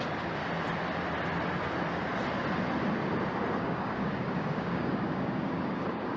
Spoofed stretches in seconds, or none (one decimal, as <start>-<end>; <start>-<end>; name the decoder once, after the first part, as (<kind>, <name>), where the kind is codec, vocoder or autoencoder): 0.0-0.4 (codec, DAC); 3.6-6.2